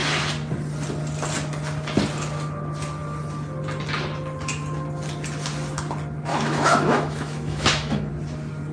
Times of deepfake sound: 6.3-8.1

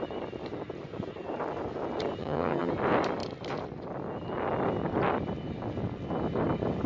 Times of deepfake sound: 2.2-2.7

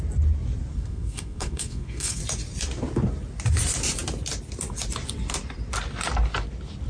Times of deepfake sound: 0.7-2.2

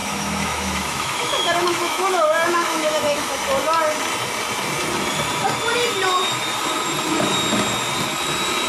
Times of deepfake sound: 0.0-3.4

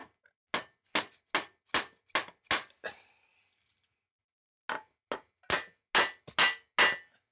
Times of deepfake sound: none

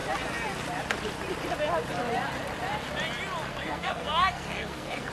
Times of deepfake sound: 3.5-5.1